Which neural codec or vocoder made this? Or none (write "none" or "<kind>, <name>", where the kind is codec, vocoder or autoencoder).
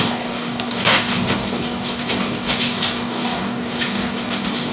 codec, DAC